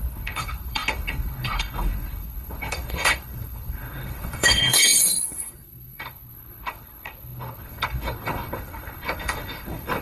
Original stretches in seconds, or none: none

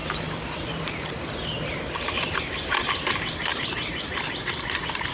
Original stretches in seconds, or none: 3.1-5.1

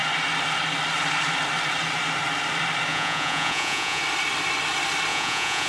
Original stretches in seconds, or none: 0.0-2.9; 4.0-5.1

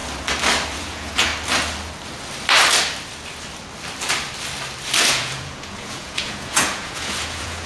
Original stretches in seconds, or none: 0.0-0.8; 1.3-5.1

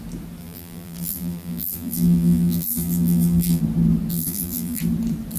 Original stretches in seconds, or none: 0.0-0.4; 3.6-4.1; 4.8-5.4

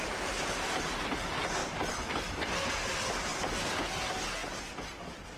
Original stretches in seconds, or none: 0.0-1.6; 2.3-3.3; 3.9-5.4